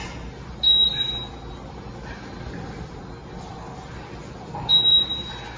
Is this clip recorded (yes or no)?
yes